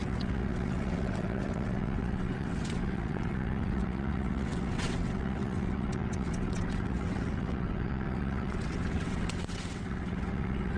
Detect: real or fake fake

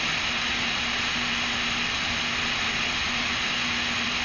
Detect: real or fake real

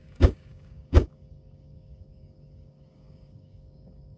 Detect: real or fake fake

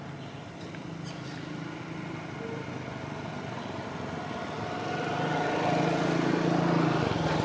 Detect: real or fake real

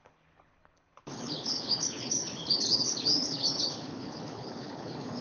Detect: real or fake fake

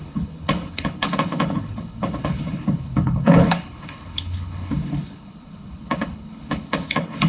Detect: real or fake fake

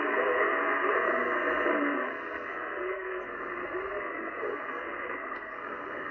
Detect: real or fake fake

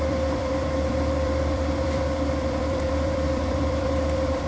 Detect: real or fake fake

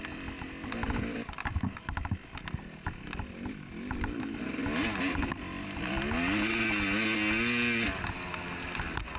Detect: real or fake real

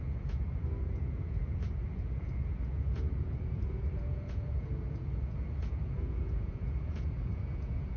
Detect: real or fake fake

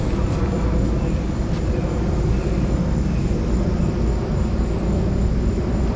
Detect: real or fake real